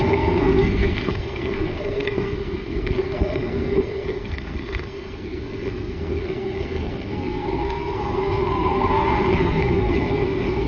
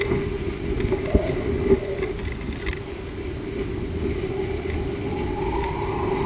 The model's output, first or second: first